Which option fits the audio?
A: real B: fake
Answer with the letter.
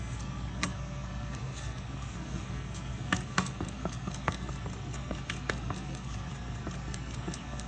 B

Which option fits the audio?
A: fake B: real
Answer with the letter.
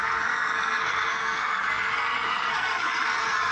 A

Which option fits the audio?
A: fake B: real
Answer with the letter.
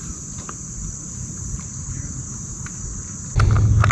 B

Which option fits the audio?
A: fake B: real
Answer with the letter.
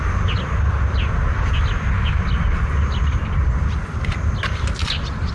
B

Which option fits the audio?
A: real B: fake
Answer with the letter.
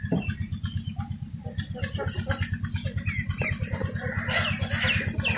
A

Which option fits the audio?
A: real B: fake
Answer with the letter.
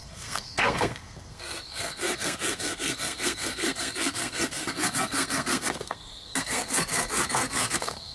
B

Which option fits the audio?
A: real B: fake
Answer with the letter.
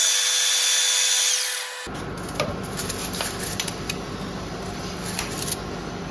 A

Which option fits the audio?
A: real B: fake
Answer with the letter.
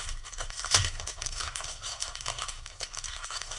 B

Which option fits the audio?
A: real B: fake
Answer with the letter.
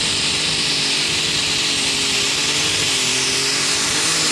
A